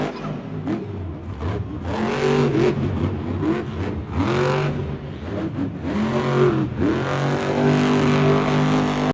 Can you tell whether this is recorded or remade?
recorded